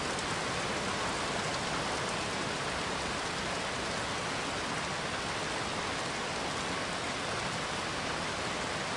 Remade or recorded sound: recorded